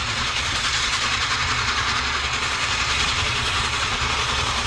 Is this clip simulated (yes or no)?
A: yes